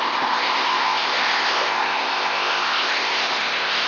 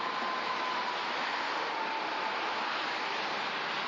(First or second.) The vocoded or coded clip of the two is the first